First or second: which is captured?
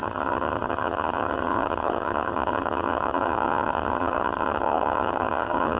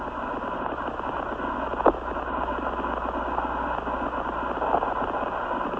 second